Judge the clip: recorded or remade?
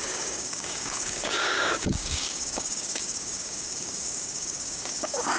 remade